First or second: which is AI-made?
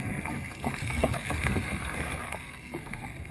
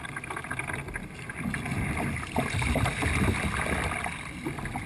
first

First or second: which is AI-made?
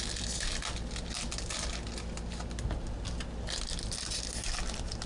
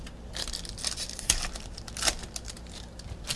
second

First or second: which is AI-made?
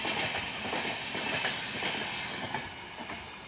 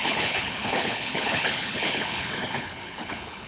second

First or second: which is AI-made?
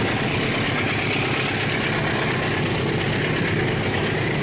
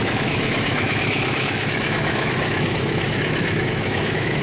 second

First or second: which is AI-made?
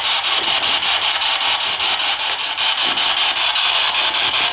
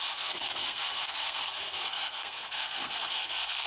second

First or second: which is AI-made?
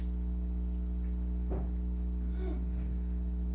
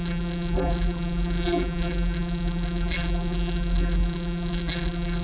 second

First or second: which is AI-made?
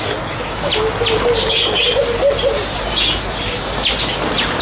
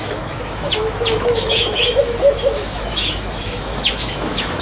second